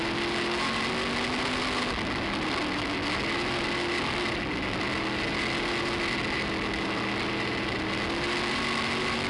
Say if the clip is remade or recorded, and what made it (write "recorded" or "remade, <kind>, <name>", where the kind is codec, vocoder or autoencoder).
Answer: recorded